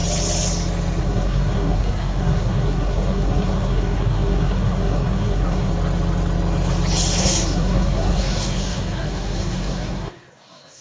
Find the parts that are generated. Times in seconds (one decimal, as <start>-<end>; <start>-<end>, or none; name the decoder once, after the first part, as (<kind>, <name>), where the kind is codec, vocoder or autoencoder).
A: 1.0-5.7 (codec, SNAC); 7.2-10.8